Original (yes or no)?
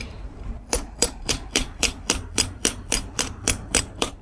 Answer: no